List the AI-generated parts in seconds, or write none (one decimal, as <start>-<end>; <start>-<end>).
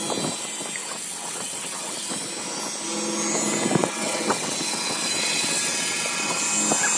0.8-2.1; 3.8-6.4